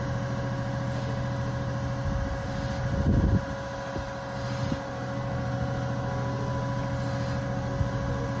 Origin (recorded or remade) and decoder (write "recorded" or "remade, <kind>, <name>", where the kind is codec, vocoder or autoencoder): recorded